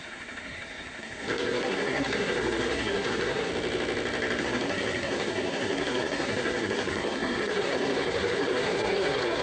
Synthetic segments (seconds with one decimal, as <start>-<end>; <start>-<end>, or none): 0.0-3.5; 4.4-9.4